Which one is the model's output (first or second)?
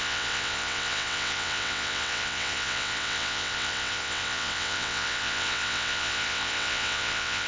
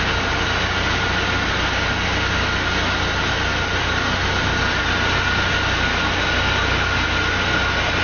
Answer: first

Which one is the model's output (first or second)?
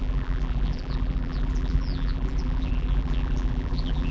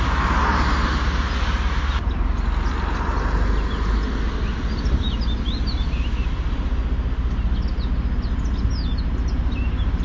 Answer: first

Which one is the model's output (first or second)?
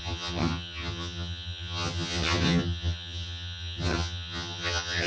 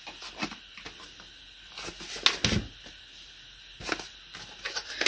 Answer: first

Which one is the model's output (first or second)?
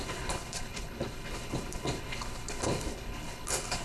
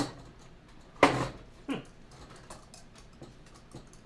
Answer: first